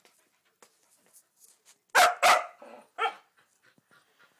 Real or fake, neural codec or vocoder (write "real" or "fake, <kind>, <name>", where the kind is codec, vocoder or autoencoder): real